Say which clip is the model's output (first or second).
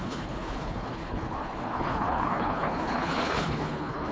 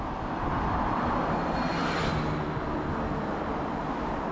first